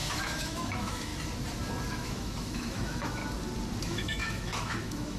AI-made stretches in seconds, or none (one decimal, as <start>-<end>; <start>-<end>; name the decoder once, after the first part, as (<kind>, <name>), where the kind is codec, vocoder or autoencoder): 0.0-1.1 (autoencoder, DAC-VAE); 1.9-3.2; 3.8-5.2